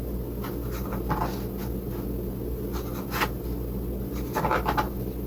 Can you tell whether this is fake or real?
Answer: real